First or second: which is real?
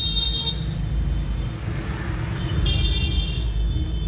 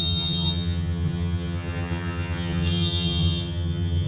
first